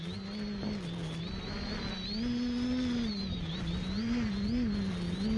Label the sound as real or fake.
real